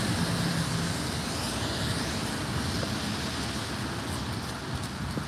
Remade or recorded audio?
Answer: recorded